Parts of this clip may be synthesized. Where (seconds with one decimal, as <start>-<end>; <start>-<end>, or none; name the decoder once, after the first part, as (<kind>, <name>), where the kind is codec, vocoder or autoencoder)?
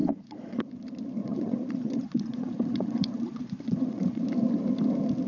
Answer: 0.0-0.6 (vocoder, Vocos); 1.2-4.2